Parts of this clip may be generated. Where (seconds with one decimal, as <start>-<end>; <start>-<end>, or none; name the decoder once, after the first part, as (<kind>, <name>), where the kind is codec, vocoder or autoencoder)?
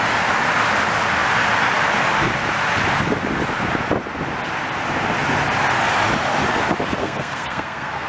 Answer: 7.0-8.1 (codec, SNAC)